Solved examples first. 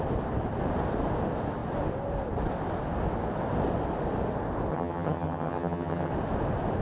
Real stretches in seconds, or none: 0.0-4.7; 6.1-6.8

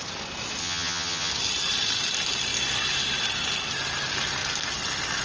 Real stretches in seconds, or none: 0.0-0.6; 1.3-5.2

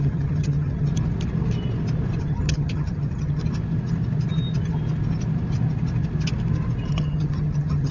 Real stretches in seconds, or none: 0.9-2.2; 3.4-6.9

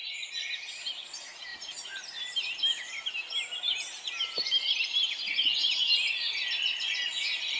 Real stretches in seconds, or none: 0.0-7.6

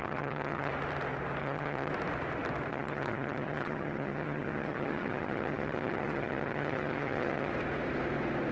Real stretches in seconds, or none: 0.7-1.4; 1.9-2.7; 7.5-8.5

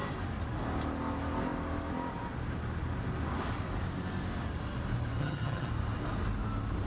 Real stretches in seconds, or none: 0.0-5.2; 5.7-6.9